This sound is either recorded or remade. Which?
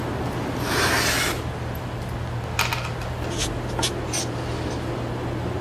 recorded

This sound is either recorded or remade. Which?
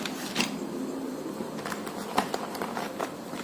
recorded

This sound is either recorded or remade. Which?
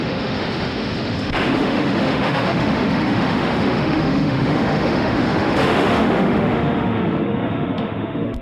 remade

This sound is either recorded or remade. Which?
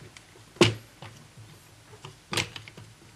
recorded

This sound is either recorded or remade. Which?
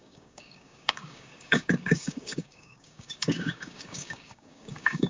remade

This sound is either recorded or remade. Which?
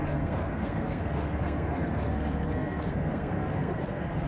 remade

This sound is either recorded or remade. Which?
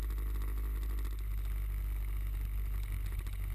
recorded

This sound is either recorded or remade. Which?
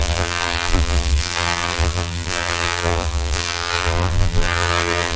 remade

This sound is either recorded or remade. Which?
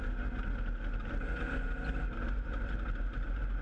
recorded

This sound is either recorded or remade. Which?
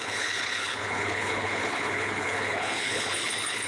remade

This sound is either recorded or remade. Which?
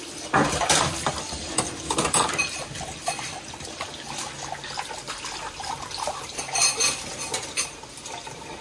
remade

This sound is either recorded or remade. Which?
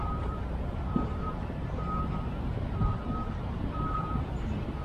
remade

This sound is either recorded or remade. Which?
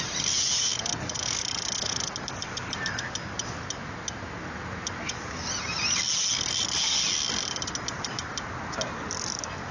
recorded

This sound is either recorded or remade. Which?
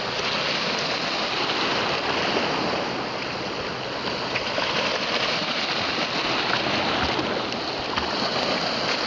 recorded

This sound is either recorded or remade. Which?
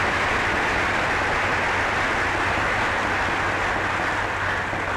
recorded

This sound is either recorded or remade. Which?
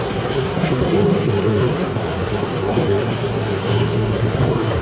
remade